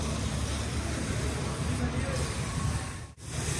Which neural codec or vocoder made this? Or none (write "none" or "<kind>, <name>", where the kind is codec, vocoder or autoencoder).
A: none